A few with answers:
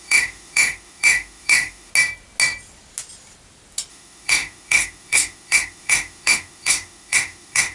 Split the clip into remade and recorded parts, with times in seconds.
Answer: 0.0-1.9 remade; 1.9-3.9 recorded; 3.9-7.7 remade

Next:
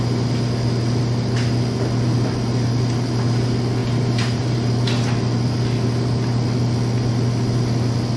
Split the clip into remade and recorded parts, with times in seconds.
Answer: 0.0-3.8 recorded; 3.8-4.6 remade; 4.6-8.2 recorded